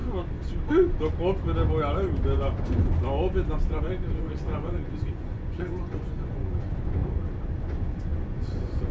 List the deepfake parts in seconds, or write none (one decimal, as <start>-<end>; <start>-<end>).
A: 3.8-7.0; 7.6-8.9